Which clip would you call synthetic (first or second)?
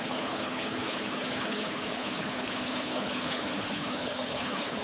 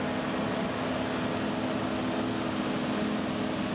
first